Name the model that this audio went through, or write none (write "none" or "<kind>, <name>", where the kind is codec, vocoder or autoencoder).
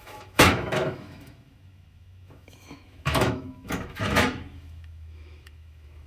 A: autoencoder, DAC-VAE